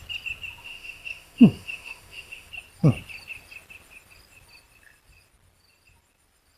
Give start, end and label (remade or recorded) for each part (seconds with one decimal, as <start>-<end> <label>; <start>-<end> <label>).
0.0-0.6 recorded; 0.6-2.5 remade; 2.5-6.6 recorded